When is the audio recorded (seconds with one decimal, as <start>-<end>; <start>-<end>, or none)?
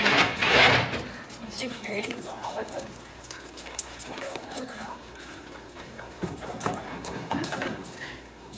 0.7-1.4